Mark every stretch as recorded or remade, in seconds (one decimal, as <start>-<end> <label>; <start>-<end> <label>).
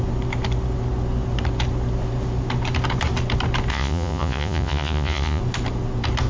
0.0-3.7 recorded; 3.7-5.4 remade; 5.4-6.3 recorded